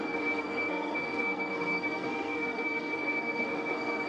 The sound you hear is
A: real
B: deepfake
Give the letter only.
B